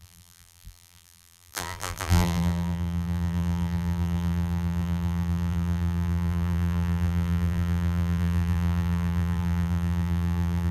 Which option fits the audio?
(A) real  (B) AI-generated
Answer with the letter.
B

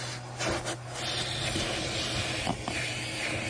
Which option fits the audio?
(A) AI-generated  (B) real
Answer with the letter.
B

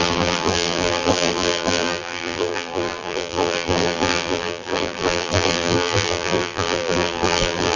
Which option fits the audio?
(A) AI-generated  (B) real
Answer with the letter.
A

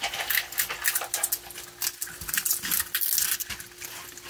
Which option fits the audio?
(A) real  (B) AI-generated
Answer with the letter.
A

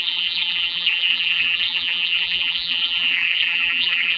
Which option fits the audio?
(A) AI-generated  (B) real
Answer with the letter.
A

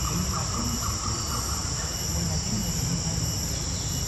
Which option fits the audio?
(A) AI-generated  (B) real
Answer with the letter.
B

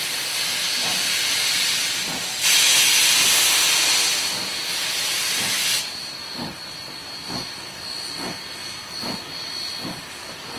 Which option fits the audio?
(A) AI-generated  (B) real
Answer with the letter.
B